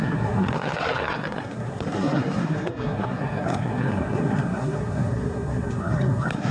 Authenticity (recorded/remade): remade